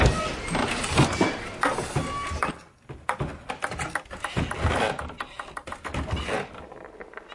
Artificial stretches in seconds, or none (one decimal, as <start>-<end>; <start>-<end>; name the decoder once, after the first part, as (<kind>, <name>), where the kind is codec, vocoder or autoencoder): none